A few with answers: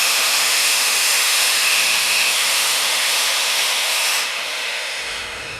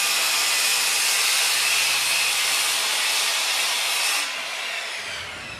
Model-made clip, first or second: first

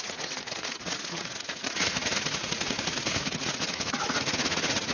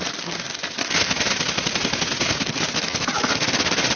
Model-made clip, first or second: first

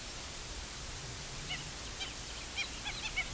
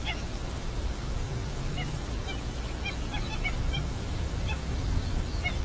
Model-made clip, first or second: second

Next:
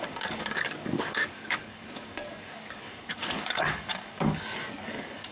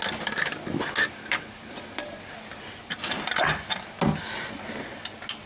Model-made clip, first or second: first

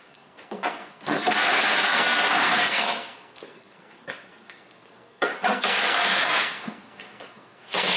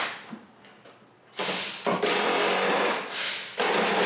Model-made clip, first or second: first